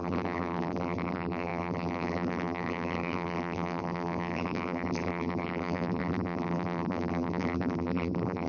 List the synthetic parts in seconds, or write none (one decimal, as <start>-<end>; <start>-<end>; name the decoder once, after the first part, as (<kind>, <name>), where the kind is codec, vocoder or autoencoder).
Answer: 0.0-8.5 (vocoder, BigVGAN v2)